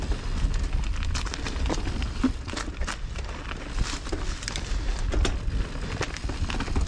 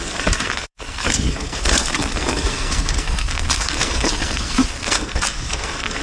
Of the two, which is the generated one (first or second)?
second